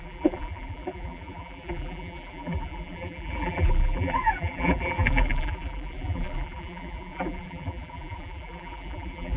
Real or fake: fake